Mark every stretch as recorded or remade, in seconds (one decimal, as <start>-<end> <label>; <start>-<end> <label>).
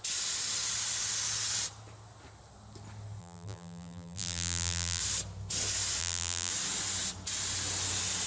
0.0-3.2 recorded; 3.2-5.0 remade; 5.0-6.0 recorded; 6.0-6.5 remade; 6.5-8.3 recorded